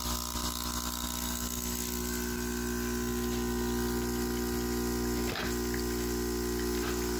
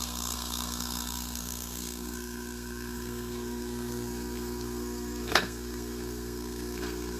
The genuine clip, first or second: first